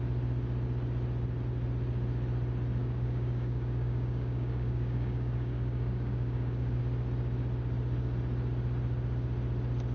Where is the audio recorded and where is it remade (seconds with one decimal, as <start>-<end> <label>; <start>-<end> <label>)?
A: 0.0-2.8 recorded; 2.8-6.8 remade; 6.8-9.9 recorded